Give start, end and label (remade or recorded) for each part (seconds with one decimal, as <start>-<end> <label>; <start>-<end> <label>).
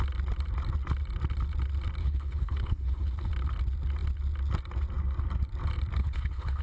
0.0-2.0 recorded; 2.0-3.3 remade; 3.3-6.0 recorded; 6.0-6.6 remade